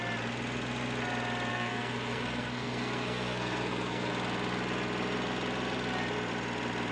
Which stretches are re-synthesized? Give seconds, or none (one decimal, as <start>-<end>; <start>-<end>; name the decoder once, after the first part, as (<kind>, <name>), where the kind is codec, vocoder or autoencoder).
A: 1.5-4.1 (codec, SNAC)